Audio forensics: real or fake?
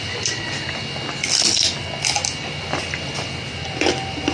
real